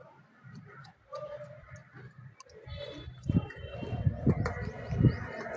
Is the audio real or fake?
real